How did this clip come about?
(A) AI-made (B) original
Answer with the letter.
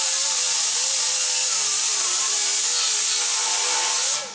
B